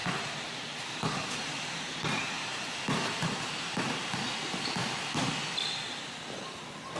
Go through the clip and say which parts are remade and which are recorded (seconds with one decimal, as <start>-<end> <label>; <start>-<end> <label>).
0.0-4.2 remade; 4.2-4.8 recorded; 4.8-5.3 remade; 5.3-7.0 recorded